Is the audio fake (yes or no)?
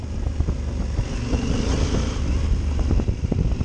no